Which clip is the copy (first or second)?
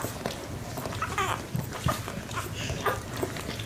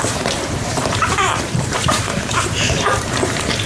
second